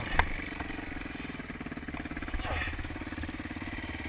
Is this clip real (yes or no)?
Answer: yes